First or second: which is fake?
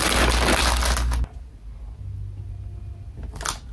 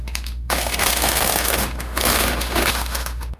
second